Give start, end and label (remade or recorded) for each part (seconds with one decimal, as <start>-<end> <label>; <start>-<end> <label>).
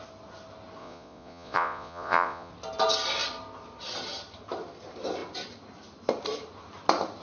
0.0-0.8 recorded; 0.8-2.5 remade; 2.5-7.2 recorded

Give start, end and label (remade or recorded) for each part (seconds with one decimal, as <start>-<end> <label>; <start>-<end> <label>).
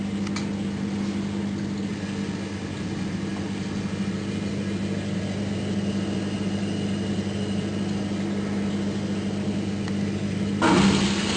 0.0-11.4 recorded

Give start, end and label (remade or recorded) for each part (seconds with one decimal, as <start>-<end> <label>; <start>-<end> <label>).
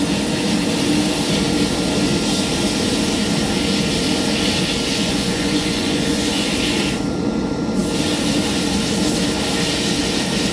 0.0-4.9 recorded; 4.9-6.5 remade; 6.5-10.5 recorded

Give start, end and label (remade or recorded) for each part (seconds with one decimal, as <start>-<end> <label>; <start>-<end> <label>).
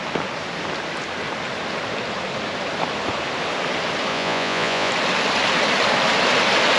0.0-4.1 recorded; 4.1-4.9 remade; 4.9-6.8 recorded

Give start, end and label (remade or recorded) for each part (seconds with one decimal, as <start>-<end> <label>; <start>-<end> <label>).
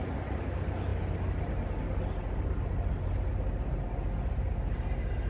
0.0-5.3 recorded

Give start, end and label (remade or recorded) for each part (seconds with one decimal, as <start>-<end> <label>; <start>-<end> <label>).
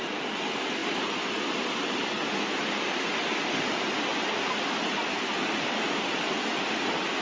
0.0-7.2 recorded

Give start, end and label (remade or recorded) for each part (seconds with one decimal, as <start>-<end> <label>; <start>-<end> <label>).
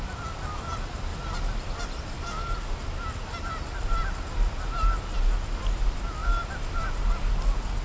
0.0-7.8 recorded